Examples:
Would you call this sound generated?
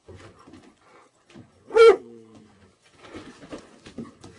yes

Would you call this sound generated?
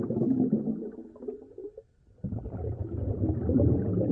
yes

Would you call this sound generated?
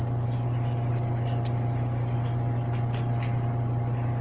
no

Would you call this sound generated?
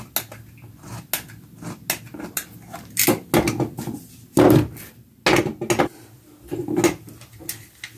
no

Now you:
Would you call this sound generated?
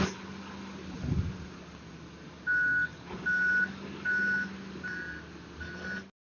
no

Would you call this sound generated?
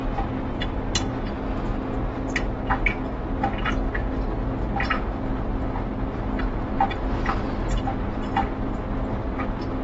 no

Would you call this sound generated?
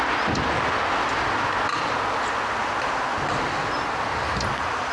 no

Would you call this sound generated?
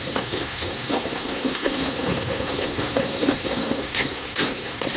yes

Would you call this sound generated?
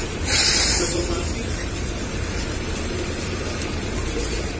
yes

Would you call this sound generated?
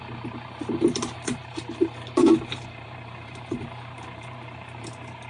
yes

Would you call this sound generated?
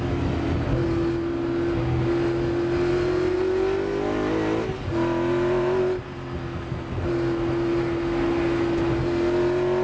no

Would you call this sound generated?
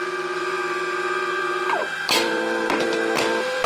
yes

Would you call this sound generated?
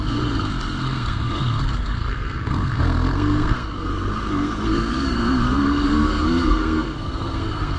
yes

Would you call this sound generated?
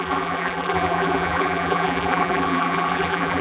yes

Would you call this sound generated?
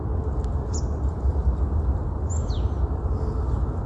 no